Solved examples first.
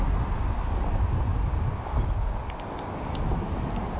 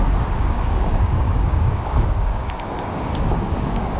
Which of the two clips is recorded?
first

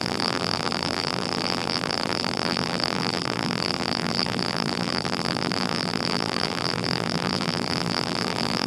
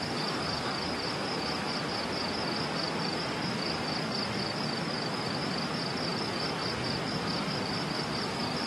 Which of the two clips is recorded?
second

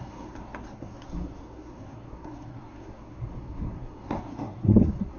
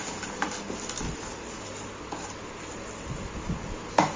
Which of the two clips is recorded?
second